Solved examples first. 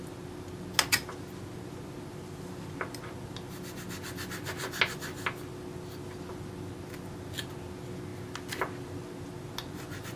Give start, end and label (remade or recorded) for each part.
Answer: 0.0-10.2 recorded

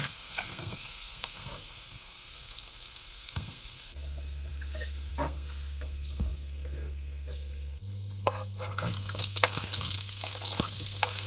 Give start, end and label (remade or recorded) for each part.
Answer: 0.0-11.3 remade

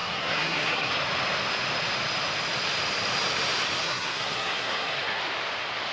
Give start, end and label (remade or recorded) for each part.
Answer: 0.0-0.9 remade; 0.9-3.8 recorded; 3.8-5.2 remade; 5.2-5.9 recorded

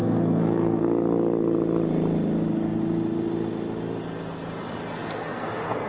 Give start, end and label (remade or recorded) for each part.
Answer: 0.0-0.8 remade; 0.8-5.0 recorded; 5.0-5.9 remade

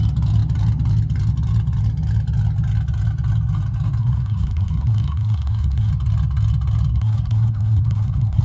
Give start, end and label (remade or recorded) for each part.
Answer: 0.0-4.0 recorded; 4.0-5.9 remade; 5.9-6.9 recorded; 6.9-8.4 remade

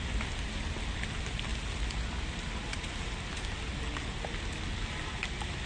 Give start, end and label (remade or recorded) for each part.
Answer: 0.0-5.7 recorded